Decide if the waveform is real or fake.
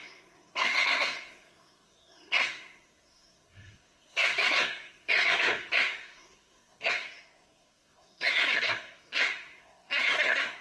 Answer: fake